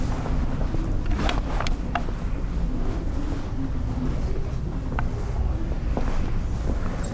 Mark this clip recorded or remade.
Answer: recorded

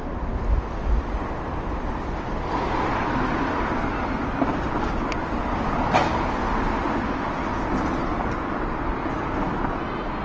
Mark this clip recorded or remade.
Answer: recorded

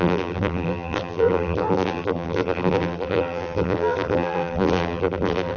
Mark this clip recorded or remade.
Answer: remade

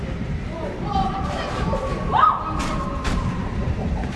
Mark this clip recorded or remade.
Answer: remade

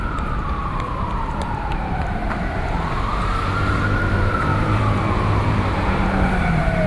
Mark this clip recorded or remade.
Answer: remade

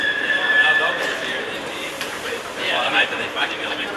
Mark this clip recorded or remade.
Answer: remade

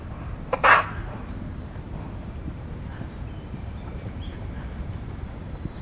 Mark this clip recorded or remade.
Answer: remade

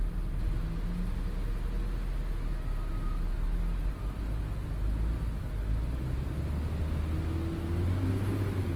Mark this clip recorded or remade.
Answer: recorded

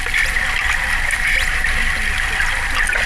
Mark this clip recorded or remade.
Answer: recorded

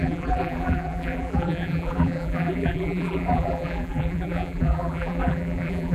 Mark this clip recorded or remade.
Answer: remade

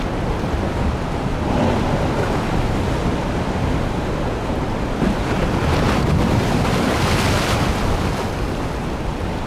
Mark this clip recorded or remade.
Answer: recorded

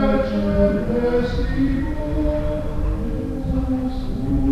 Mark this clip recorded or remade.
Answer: remade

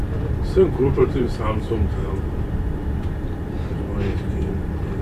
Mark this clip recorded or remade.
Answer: remade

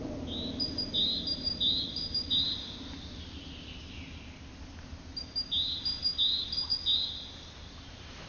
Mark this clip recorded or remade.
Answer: recorded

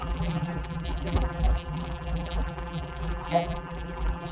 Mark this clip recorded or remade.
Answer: remade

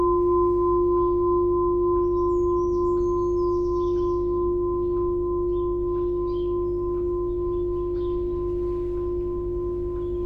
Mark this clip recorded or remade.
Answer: recorded